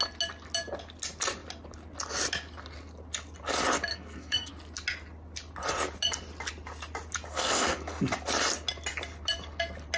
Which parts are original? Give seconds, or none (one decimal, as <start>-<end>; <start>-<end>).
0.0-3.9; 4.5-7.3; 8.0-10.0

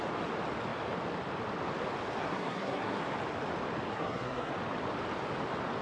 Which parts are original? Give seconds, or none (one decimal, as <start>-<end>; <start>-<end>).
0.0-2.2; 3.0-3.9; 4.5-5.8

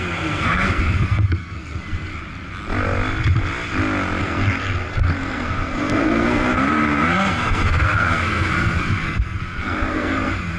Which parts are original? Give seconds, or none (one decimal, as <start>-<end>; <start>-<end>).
2.1-4.2